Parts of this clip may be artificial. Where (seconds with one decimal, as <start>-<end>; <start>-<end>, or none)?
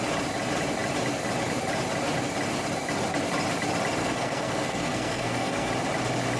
4.0-5.7